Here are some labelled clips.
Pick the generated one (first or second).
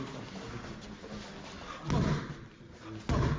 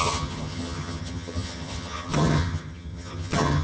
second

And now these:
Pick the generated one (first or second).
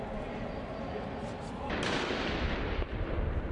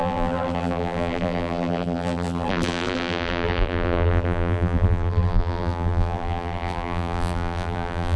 second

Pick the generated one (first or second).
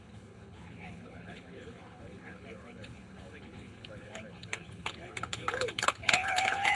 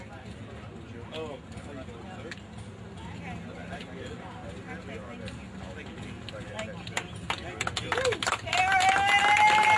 first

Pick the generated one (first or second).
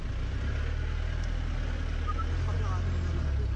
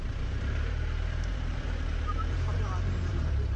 second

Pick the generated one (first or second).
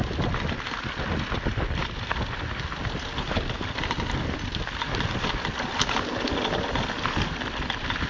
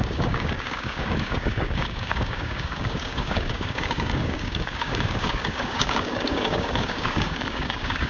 second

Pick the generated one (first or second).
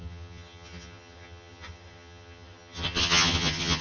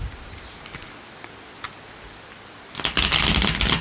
first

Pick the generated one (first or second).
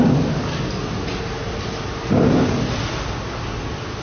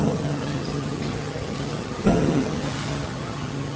second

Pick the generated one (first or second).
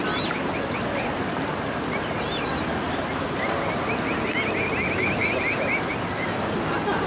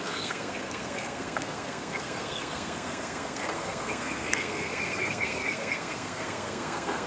second